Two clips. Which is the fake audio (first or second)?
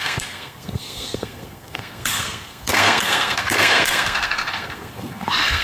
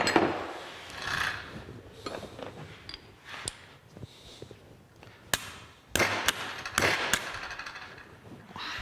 first